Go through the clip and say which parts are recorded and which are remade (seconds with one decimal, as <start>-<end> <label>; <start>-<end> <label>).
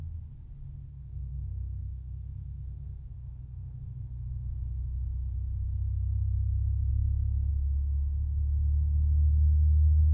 0.0-0.9 recorded; 0.9-4.5 remade; 4.5-6.9 recorded; 6.9-7.5 remade; 7.5-10.1 recorded